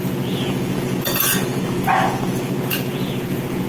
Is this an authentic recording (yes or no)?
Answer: no